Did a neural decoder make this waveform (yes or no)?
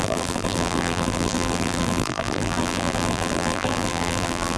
yes